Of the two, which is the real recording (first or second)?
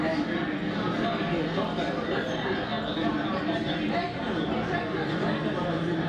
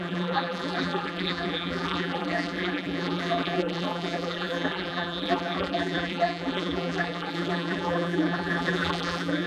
first